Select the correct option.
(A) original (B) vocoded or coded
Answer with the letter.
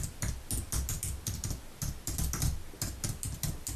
A